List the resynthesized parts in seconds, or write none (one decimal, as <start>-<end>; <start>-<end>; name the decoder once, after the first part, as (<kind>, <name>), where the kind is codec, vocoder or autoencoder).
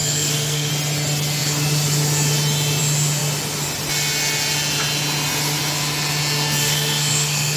0.0-0.7 (codec, SNAC); 6.6-7.6